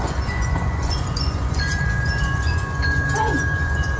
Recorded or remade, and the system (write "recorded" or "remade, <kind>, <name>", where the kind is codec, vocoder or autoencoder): remade, vocoder, Vocos